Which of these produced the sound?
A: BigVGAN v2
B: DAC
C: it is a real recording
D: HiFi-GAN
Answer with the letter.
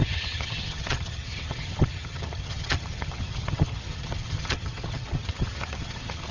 D